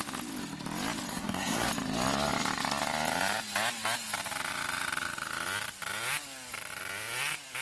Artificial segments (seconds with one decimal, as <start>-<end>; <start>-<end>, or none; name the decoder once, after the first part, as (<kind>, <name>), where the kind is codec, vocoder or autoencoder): 1.1-1.7 (codec, SNAC)